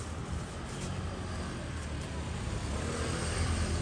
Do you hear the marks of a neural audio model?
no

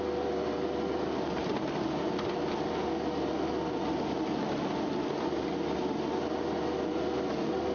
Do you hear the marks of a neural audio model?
no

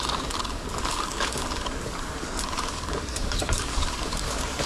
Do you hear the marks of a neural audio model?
yes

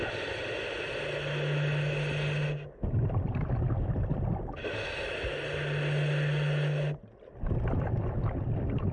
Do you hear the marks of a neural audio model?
no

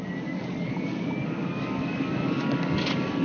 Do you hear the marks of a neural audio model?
yes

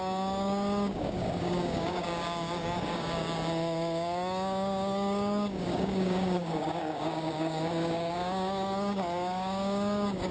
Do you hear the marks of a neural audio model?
yes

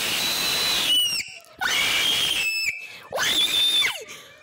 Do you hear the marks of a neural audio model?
no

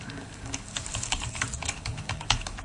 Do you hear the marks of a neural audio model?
yes